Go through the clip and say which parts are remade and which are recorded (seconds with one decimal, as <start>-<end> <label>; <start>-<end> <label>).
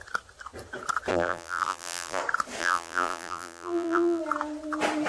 0.0-1.1 recorded; 1.1-2.2 remade; 2.2-2.6 recorded; 2.6-4.2 remade; 4.2-5.1 recorded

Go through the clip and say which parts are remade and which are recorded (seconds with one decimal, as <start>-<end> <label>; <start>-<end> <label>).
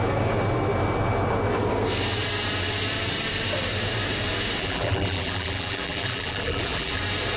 0.0-4.6 recorded; 4.6-7.0 remade; 7.0-7.4 recorded